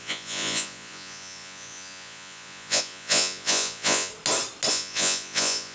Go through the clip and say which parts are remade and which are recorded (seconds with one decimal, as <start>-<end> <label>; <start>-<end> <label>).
0.0-4.1 remade; 4.1-4.7 recorded; 4.7-5.7 remade

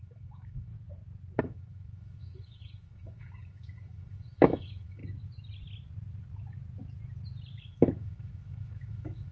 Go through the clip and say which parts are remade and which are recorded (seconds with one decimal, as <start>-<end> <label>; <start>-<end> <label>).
0.0-0.7 remade; 0.7-1.4 recorded; 1.4-5.0 remade; 5.0-7.6 recorded; 7.6-9.3 remade